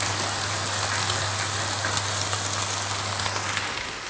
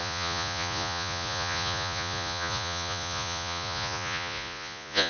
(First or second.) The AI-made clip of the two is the second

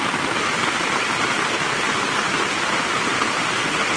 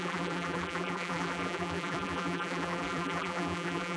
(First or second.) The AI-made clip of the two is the second